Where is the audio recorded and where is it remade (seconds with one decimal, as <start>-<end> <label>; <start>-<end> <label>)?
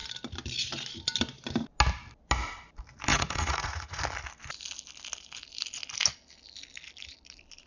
0.0-3.1 recorded; 3.1-4.0 remade; 4.0-7.7 recorded